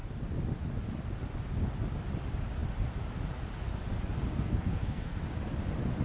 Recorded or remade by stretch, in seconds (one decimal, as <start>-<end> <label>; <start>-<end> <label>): 0.0-4.3 recorded; 4.3-5.2 remade; 5.2-6.0 recorded